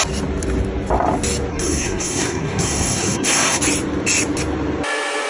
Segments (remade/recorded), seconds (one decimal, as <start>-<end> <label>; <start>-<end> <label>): 0.0-1.5 recorded; 1.5-3.6 remade; 3.6-5.3 recorded